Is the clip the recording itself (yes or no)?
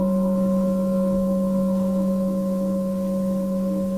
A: no